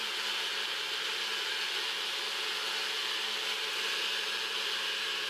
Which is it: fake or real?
real